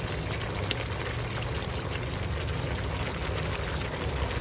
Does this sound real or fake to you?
real